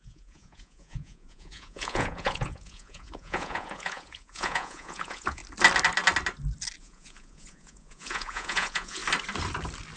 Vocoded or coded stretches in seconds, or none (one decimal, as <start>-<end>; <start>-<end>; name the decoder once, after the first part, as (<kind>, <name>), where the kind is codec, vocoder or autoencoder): 0.0-5.4 (vocoder, Vocos); 6.8-9.0